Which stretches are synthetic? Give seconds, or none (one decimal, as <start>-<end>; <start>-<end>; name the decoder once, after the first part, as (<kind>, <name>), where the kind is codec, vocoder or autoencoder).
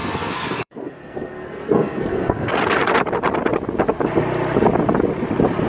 0.0-2.5 (codec, SNAC)